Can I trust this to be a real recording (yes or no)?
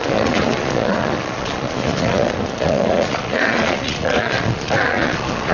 no